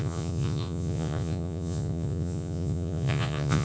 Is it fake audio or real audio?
fake